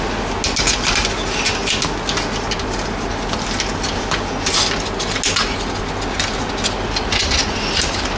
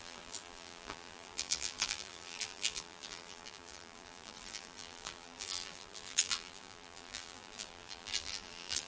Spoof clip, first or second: second